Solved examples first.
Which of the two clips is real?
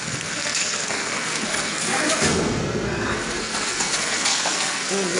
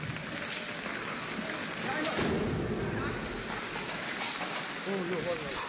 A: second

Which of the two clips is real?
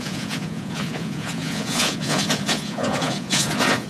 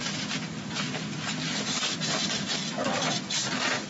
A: second